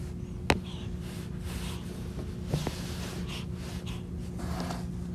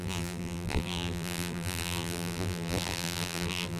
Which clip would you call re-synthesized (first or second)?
second